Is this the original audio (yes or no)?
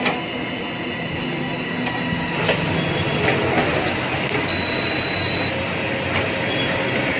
yes